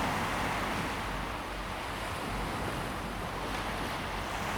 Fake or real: real